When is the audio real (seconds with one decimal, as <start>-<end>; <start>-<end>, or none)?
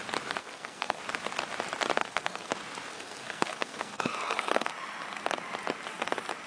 0.0-0.4; 1.0-2.0; 2.5-2.9; 4.7-6.5